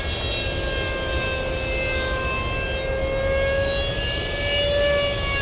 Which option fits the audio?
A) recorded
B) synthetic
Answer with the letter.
A